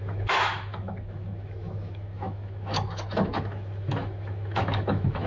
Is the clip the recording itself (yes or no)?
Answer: no